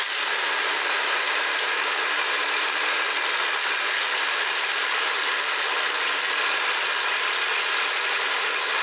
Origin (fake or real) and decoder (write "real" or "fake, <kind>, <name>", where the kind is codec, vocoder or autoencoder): real